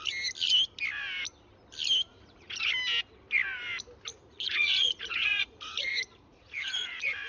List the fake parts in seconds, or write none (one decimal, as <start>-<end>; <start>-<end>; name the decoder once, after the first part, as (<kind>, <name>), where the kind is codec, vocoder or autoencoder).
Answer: 2.1-2.6 (vocoder, Vocos); 4.1-7.3